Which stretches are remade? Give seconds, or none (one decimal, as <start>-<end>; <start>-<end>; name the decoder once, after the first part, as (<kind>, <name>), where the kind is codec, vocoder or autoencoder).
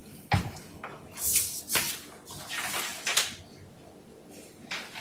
0.0-0.6 (vocoder, BigVGAN v2); 2.9-3.4